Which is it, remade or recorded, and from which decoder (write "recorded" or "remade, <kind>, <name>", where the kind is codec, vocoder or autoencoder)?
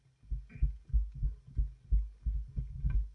recorded